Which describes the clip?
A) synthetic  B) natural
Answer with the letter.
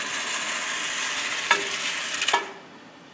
B